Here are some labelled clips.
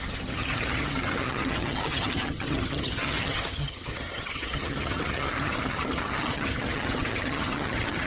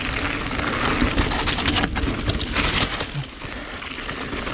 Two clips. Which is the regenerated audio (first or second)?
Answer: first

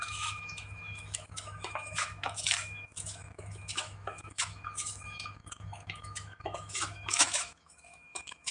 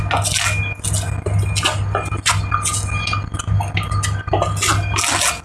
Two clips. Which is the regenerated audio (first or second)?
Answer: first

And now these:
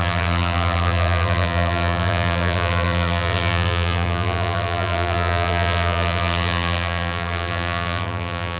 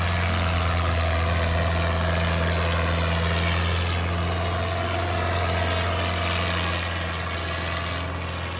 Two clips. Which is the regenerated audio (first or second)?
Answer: first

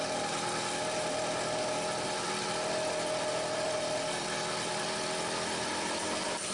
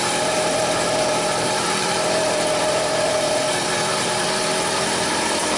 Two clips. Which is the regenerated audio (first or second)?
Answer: second